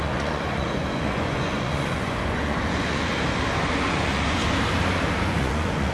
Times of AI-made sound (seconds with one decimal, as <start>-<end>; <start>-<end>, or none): 0.0-3.1; 3.6-4.4; 5.2-5.9